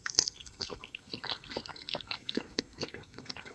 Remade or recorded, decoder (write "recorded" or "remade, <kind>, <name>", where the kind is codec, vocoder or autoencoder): remade, codec, SNAC